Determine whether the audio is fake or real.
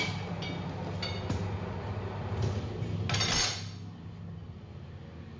real